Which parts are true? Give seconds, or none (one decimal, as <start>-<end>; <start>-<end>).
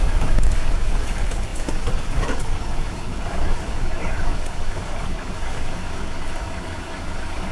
none